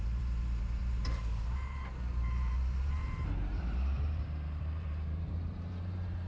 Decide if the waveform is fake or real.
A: fake